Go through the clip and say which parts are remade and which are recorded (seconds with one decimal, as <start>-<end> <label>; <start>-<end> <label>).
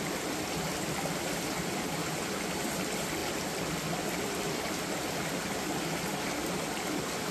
0.0-7.3 recorded